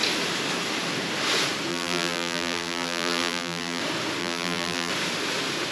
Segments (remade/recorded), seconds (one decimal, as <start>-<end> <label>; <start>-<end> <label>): 0.0-1.7 recorded; 1.7-3.8 remade; 3.8-4.2 recorded; 4.2-4.9 remade; 4.9-5.7 recorded